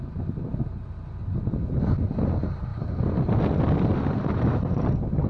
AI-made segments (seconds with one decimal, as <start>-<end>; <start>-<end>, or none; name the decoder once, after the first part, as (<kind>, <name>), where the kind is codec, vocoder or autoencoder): none